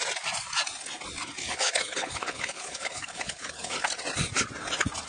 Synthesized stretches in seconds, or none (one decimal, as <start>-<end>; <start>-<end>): 1.4-3.9